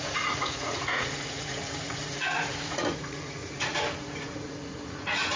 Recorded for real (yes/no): no